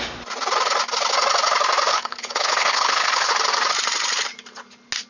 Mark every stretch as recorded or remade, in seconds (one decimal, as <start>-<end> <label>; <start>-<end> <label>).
0.0-1.9 recorded; 1.9-3.3 remade; 3.3-5.1 recorded